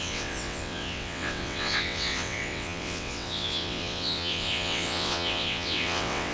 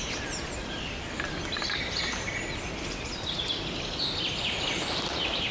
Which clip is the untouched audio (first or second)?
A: second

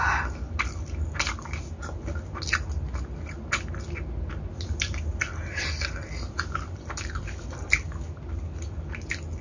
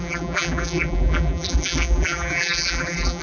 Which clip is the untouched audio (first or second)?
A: first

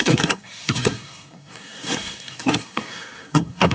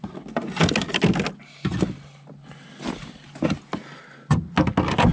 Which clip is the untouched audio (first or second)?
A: second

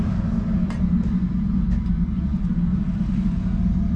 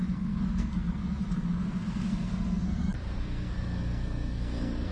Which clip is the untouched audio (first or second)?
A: first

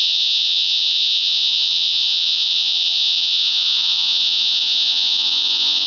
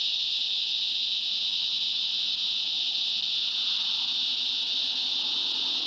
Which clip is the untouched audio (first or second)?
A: second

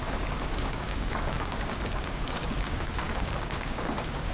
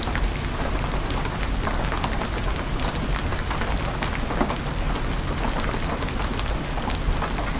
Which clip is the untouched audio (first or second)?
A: second